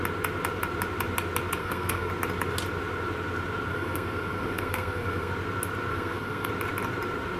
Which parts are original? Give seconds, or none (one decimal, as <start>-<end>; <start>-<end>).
0.0-1.6; 2.1-3.7; 5.3-5.9; 6.5-7.4